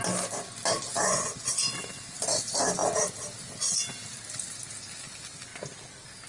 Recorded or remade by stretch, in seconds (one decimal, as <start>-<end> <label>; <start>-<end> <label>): 0.0-0.9 recorded; 0.9-1.9 remade; 1.9-6.3 recorded